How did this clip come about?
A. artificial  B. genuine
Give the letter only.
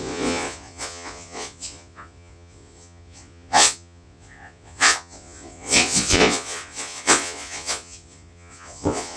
A